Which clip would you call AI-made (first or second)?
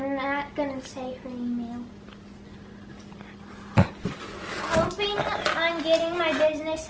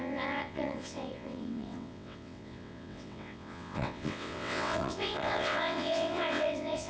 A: second